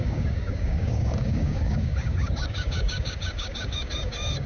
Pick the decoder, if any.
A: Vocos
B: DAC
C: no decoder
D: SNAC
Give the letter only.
B